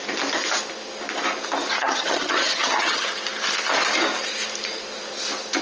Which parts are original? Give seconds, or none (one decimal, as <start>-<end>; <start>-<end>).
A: 0.0-1.8; 3.1-5.6